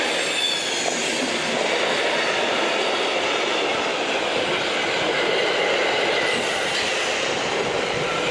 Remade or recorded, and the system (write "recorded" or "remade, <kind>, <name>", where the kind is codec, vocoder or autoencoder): recorded